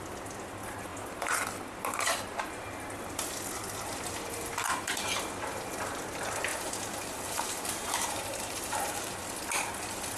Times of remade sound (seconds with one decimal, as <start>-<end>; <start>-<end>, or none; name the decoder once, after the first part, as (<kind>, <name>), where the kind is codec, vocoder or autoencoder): 6.5-9.2 (vocoder, BigVGAN v2)